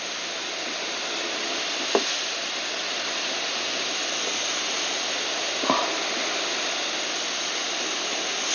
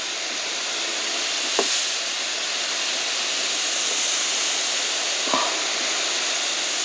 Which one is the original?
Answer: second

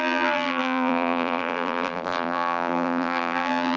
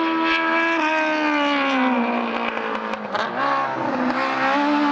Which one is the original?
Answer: second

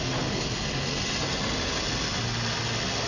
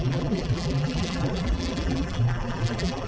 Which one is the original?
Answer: first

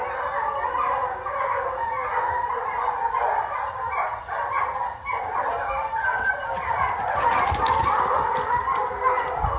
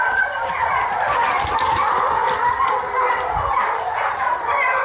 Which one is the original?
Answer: first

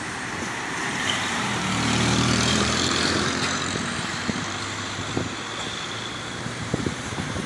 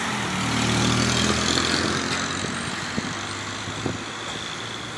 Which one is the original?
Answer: second